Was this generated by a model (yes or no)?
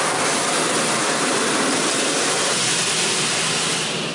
no